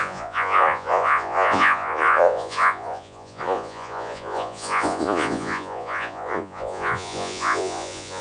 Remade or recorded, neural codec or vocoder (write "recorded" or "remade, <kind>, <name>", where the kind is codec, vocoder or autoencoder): remade, vocoder, Vocos